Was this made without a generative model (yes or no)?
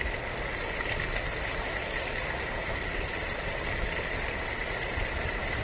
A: yes